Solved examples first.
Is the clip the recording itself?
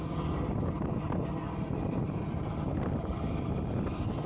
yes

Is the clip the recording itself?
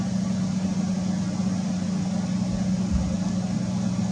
yes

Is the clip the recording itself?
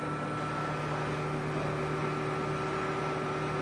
yes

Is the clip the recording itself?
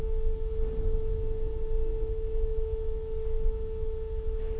yes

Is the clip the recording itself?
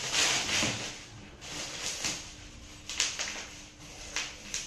yes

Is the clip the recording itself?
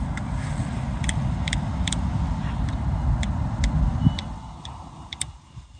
yes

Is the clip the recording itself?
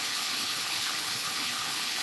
no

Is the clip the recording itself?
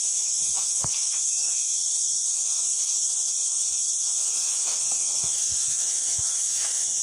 no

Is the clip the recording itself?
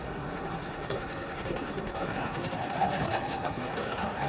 no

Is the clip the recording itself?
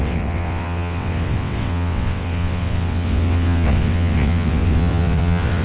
no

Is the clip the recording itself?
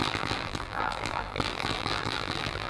no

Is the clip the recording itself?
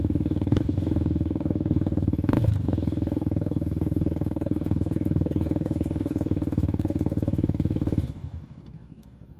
no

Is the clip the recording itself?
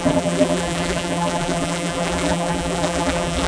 no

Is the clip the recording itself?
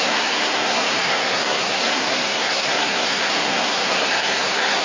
no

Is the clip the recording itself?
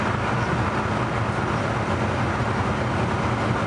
yes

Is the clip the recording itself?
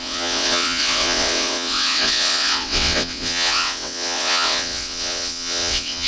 no